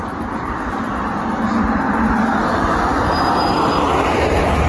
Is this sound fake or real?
real